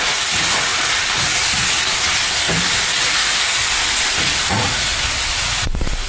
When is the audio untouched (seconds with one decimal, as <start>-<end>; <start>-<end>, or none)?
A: 0.7-2.9; 3.6-4.5; 4.9-5.4